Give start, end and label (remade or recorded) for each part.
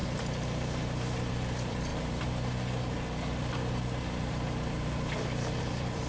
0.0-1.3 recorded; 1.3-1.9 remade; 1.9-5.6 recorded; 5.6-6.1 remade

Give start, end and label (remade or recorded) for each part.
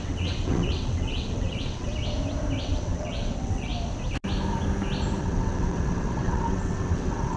0.0-1.9 remade; 1.9-2.6 recorded; 2.6-3.7 remade; 3.7-5.2 recorded; 5.2-7.4 remade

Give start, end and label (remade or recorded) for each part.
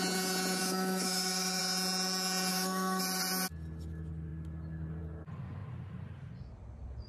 0.0-0.6 recorded; 0.6-1.6 remade; 1.6-2.5 recorded; 2.5-3.0 remade; 3.0-7.1 recorded